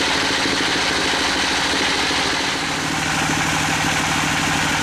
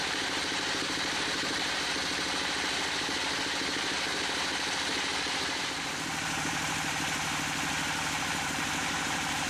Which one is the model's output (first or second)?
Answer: second